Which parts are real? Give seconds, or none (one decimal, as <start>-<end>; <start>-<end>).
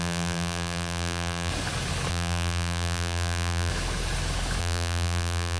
1.5-2.1; 3.7-4.6